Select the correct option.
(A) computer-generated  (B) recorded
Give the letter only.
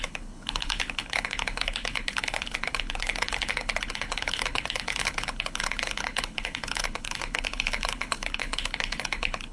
A